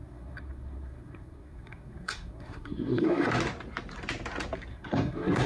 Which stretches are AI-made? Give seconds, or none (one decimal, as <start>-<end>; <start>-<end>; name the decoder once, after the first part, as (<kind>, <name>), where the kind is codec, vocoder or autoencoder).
0.0-3.3 (codec, SNAC); 4.7-5.5